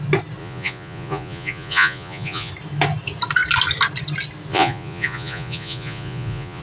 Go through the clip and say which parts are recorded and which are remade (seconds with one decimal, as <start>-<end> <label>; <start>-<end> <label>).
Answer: 0.0-0.4 recorded; 0.4-2.5 remade; 2.5-4.5 recorded; 4.5-6.6 remade